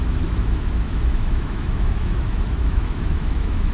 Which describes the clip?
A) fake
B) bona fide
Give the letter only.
A